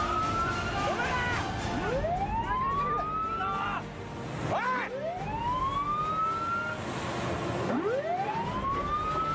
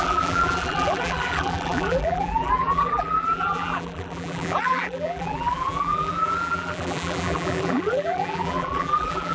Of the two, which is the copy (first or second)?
second